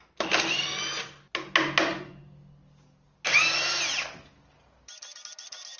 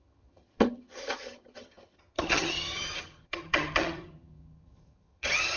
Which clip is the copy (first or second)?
second